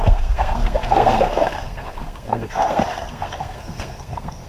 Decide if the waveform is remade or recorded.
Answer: remade